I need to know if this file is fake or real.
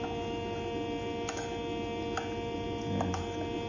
real